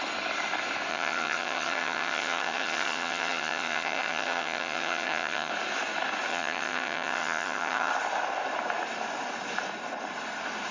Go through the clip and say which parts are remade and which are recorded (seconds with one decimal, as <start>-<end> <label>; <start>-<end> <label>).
0.0-0.9 recorded; 0.9-5.5 remade; 5.5-6.3 recorded; 6.3-7.9 remade; 7.9-10.7 recorded